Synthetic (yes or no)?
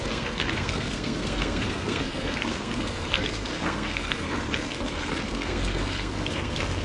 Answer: yes